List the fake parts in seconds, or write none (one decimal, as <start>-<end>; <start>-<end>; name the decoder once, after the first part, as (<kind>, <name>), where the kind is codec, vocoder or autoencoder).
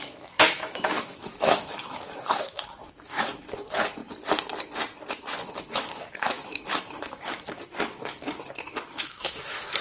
0.0-4.0 (autoencoder, DAC-VAE); 5.5-9.8